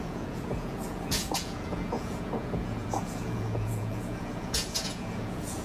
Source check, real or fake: fake